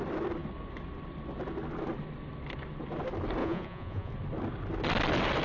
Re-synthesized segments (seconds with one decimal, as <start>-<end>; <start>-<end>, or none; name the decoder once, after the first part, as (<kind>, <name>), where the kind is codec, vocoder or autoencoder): 3.4-4.1 (vocoder, Vocos)